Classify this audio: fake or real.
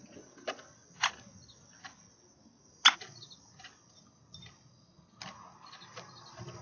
real